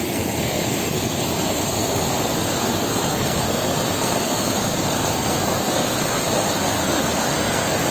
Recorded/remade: remade